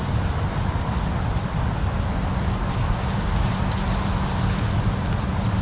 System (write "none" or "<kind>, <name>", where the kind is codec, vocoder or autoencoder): none